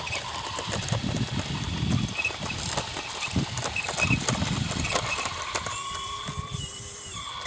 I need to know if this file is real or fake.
fake